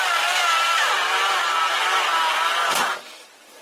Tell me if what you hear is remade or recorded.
recorded